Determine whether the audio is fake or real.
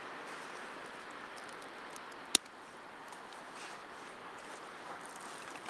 real